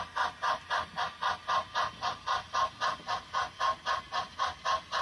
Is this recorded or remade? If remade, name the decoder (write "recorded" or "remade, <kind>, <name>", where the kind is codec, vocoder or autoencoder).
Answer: recorded